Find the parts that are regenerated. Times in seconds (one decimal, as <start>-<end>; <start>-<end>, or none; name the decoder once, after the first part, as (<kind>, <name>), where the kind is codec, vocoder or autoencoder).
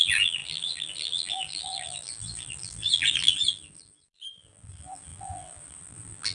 0.0-6.3 (vocoder, BigVGAN v2)